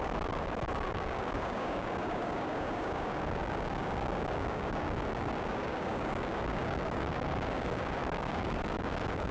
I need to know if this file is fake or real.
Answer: fake